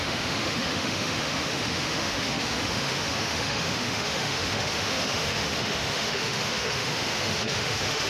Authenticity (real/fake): fake